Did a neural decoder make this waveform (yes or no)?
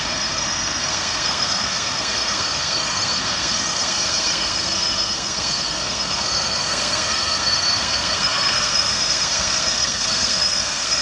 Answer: yes